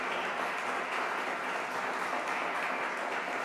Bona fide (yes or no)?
yes